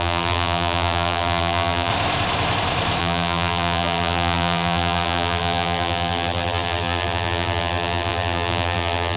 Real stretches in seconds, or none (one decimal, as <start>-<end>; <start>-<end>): 1.9-3.0

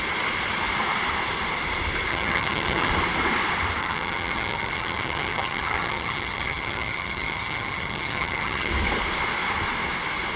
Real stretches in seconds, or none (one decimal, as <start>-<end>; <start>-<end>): 0.0-2.1; 2.9-3.8; 8.7-10.4